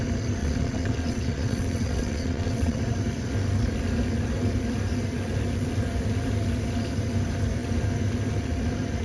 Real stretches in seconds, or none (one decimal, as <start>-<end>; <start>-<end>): 0.0-0.4; 2.8-9.0